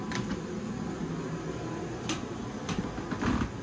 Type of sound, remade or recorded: recorded